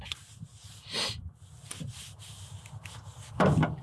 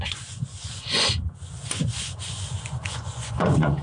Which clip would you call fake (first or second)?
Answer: second